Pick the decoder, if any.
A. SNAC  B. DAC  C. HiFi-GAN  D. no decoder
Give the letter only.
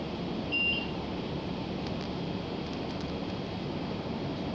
D